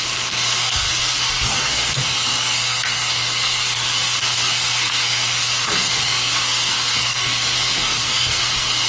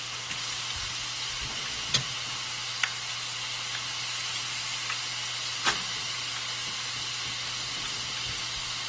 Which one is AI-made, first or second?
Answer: first